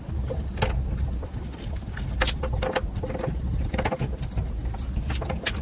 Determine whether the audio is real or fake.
real